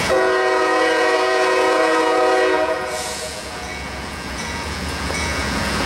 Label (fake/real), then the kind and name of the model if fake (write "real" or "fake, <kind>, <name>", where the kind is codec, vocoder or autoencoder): fake, vocoder, Vocos